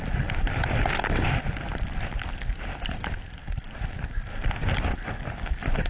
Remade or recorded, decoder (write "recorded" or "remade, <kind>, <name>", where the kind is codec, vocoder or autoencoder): recorded